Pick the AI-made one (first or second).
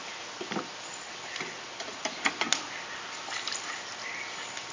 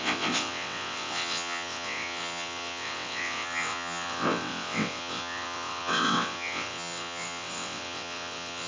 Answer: second